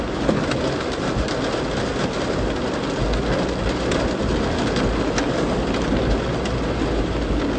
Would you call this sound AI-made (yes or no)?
no